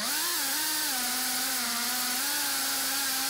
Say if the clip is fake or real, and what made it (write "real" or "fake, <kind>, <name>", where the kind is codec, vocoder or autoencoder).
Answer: real